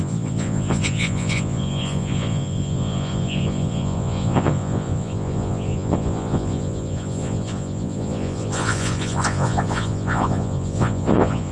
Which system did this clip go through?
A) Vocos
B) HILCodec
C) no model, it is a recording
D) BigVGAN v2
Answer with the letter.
A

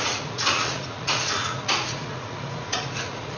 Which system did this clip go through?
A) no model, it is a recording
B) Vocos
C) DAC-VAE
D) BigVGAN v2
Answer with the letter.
B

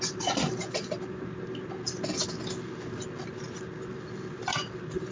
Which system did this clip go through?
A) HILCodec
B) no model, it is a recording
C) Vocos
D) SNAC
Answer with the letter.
B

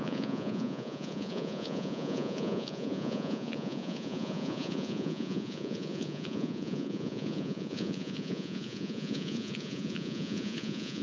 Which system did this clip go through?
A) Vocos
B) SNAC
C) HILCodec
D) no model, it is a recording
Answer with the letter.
A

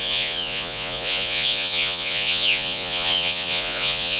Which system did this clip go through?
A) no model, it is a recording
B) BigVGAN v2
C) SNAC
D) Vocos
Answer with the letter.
D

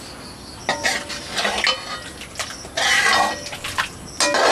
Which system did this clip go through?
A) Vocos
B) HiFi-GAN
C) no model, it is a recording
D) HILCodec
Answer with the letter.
C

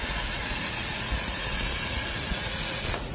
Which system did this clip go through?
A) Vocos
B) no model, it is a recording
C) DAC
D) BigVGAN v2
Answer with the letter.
A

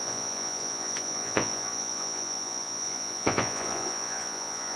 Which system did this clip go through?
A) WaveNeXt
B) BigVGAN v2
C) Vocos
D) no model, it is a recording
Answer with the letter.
C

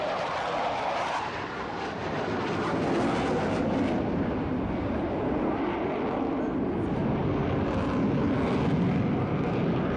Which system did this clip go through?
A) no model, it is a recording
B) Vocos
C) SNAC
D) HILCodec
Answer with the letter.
A